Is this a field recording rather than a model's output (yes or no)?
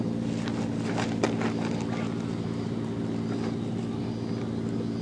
yes